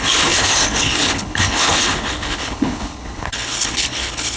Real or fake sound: fake